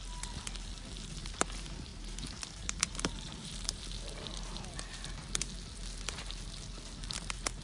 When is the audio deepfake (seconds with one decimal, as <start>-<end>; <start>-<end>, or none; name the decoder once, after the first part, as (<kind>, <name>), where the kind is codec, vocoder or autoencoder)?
1.9-3.8 (vocoder, BigVGAN v2)